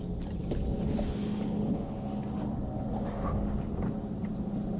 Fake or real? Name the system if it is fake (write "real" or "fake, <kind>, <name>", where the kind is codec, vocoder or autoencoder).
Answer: real